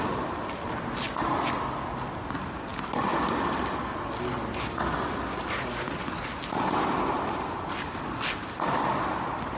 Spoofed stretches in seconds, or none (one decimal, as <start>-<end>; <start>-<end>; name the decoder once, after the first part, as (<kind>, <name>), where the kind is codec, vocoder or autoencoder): none